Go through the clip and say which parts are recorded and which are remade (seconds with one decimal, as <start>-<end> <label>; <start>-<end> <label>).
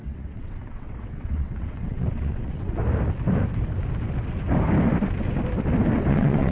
0.0-2.8 remade; 2.8-6.1 recorded; 6.1-6.5 remade